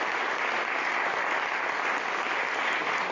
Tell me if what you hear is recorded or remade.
recorded